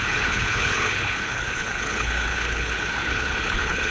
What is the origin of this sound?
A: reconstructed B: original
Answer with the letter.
A